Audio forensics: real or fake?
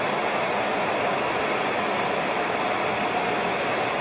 real